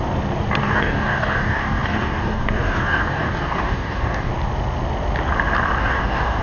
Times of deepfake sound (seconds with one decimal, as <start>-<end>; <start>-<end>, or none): 0.6-4.3; 5.8-6.4